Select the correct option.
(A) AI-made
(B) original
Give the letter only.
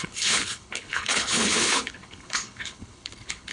A